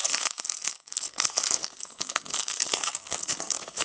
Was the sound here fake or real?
fake